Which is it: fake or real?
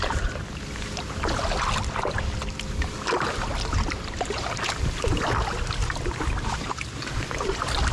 real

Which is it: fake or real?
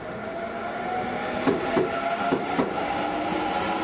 real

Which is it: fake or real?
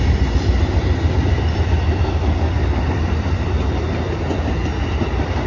real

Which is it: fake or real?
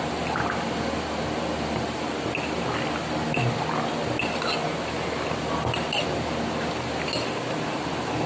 real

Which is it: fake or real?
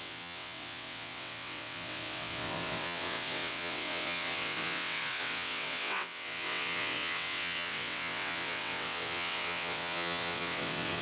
fake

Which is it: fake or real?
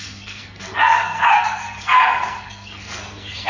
fake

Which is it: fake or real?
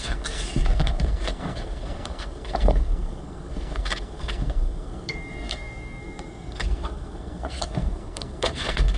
fake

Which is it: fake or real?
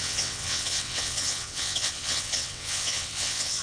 fake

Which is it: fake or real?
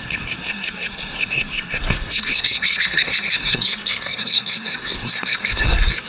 fake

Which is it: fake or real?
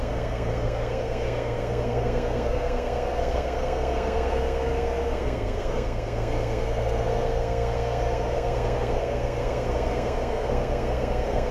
fake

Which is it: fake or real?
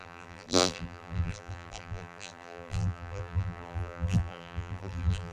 fake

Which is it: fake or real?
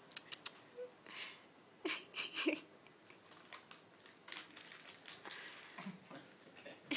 real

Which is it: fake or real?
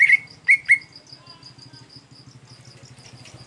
real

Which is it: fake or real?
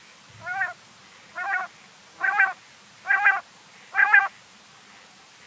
real